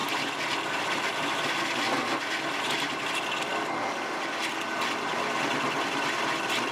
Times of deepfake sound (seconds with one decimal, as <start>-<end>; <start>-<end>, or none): none